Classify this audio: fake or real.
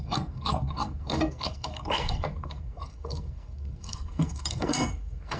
fake